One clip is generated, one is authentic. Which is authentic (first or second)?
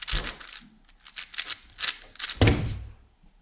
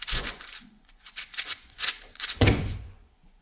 first